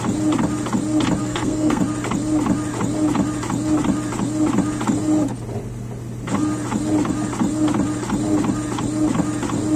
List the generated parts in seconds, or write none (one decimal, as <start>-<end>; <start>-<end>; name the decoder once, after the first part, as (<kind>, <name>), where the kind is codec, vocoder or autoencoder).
1.2-1.8 (codec, SNAC)